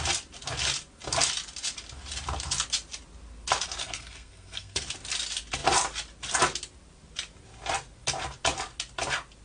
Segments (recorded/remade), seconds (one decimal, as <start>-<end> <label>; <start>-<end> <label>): 0.0-3.8 recorded; 3.8-4.8 remade; 4.8-9.4 recorded